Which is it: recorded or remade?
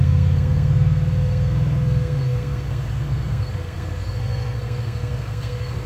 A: remade